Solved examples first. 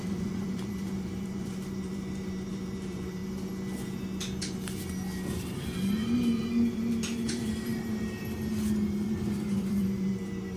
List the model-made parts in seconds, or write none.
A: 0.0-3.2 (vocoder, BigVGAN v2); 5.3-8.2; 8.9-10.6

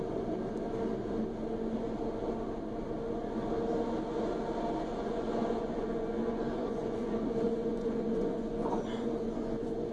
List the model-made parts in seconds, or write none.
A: 5.0-9.9 (vocoder, Vocos)